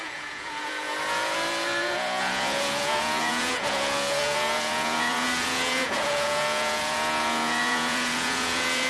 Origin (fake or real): fake